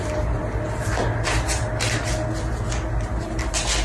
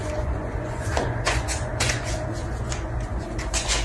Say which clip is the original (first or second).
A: first